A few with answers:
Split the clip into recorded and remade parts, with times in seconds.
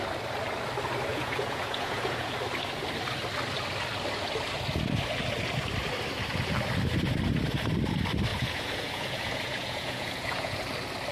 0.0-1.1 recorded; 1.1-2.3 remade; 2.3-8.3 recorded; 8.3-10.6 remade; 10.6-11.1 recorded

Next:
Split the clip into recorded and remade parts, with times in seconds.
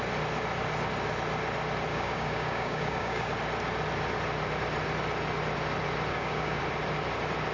0.0-1.9 recorded; 1.9-3.3 remade; 3.3-6.1 recorded; 6.1-6.6 remade; 6.6-7.5 recorded